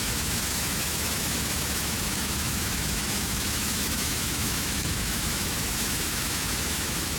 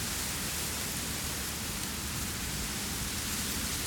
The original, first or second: second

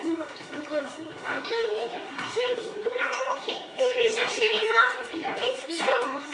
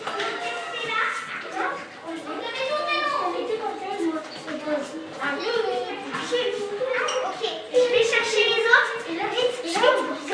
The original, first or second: second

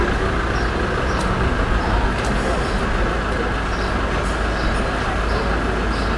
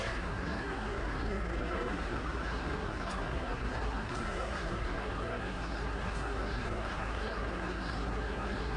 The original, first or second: first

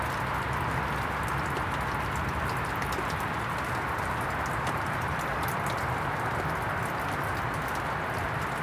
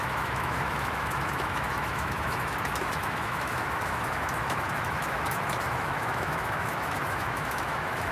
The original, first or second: first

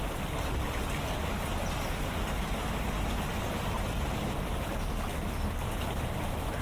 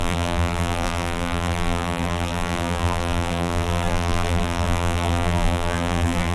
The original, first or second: first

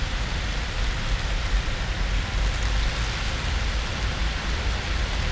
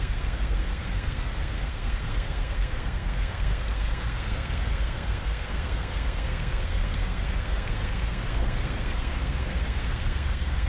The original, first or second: first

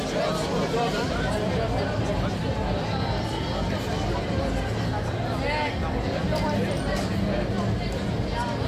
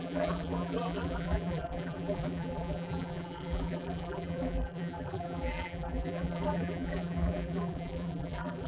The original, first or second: first